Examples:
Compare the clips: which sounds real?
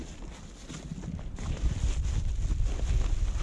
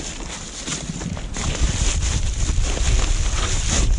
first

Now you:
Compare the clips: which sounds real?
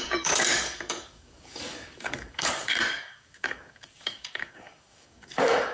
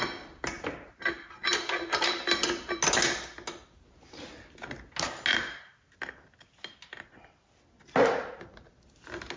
second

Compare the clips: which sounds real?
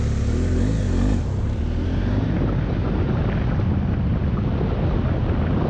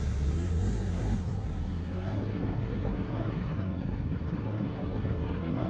first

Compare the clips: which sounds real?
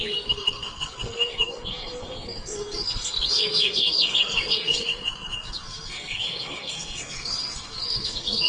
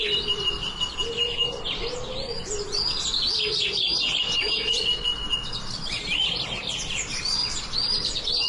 second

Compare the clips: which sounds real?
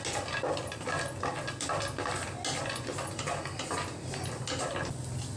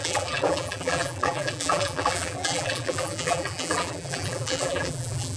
first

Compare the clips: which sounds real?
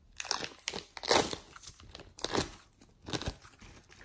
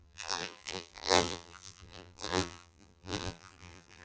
first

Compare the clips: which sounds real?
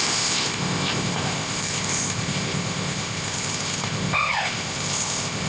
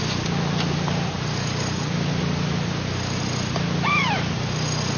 second